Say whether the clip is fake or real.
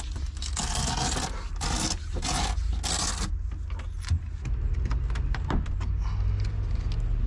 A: real